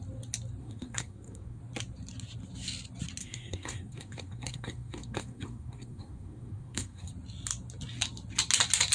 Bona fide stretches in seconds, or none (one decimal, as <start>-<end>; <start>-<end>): 0.0-0.6; 1.6-3.2; 7.1-8.9